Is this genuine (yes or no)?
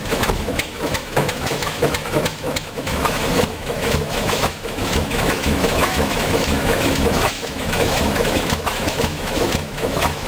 no